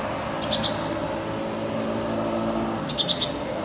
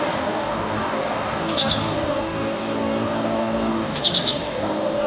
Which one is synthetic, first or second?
second